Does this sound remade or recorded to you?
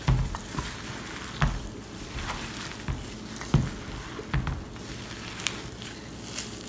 recorded